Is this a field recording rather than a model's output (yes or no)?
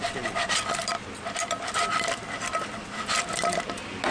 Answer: yes